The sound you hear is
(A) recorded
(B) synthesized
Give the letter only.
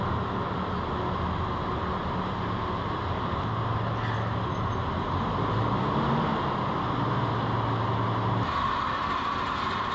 A